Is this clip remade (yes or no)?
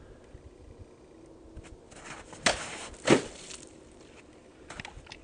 no